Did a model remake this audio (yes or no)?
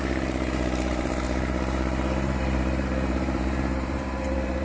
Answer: yes